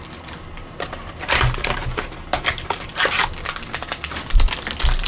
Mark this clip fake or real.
real